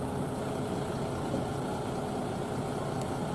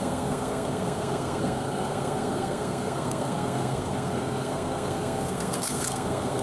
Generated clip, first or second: second